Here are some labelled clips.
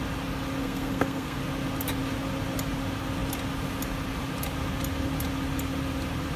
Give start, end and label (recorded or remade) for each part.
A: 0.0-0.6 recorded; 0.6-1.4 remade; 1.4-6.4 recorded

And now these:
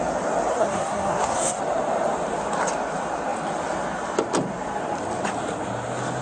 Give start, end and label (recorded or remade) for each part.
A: 0.0-0.5 recorded; 0.5-1.6 remade; 1.6-6.2 recorded

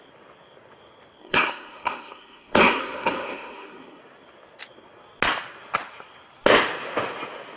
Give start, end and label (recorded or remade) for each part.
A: 0.0-1.2 recorded; 1.2-4.0 remade; 4.0-7.6 recorded

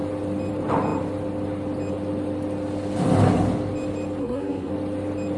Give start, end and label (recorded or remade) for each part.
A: 0.0-4.2 recorded; 4.2-4.7 remade; 4.7-5.4 recorded

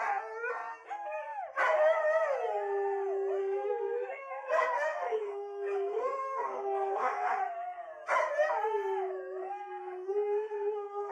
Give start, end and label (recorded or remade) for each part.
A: 0.0-3.4 recorded; 3.4-7.3 remade; 7.3-9.4 recorded; 9.4-11.1 remade